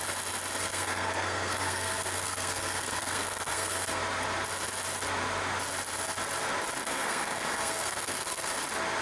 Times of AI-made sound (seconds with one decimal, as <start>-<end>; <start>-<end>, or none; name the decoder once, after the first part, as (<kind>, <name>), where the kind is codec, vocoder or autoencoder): 0.6-4.0 (codec, SNAC); 6.8-8.5